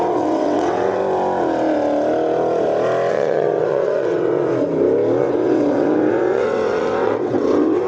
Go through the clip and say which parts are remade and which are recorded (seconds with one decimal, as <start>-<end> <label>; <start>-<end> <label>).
0.0-1.0 remade; 1.0-3.1 recorded; 3.1-4.5 remade; 4.5-5.2 recorded; 5.2-7.9 remade